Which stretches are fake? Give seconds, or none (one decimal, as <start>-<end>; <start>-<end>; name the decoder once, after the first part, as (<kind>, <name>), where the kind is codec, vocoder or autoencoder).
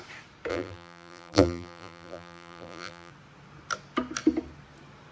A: 0.5-3.1 (vocoder, BigVGAN v2)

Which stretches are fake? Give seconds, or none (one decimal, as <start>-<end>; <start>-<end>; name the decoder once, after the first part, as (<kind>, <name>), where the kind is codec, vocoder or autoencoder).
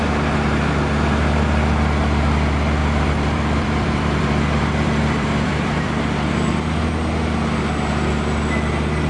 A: 2.8-6.0 (vocoder, BigVGAN v2)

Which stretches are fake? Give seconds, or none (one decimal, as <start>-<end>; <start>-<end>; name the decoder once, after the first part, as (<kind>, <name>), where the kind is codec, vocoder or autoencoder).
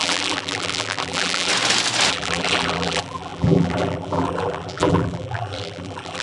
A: 0.0-1.5 (vocoder, BigVGAN v2); 2.1-6.2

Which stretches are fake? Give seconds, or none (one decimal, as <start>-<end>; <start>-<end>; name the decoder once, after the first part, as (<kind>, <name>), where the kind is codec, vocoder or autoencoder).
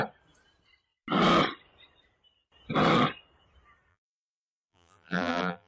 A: 3.9-5.7 (vocoder, BigVGAN v2)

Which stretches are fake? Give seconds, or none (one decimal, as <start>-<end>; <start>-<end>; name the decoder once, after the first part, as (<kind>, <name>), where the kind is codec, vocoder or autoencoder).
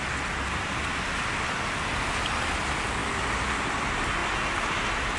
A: none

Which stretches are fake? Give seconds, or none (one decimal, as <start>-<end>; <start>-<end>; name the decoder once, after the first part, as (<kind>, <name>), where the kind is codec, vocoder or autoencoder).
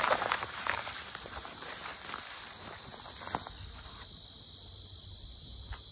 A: 0.0-1.9 (vocoder, BigVGAN v2); 5.4-5.9